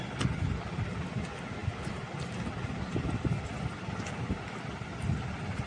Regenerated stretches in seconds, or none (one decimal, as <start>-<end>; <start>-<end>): none